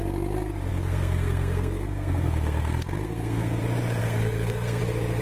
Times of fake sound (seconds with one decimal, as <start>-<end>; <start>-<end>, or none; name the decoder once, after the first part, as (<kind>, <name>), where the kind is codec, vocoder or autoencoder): 0.7-3.6 (codec, SNAC); 4.0-4.8